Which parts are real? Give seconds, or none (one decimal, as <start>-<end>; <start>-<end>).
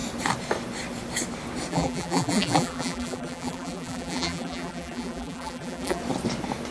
0.0-1.7; 6.0-6.7